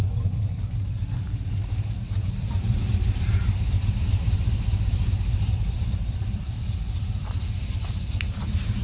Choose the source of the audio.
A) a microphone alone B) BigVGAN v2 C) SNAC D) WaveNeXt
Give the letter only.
B